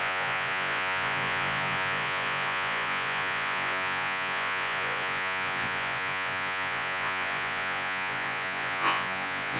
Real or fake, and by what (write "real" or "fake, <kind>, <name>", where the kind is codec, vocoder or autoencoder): fake, vocoder, Vocos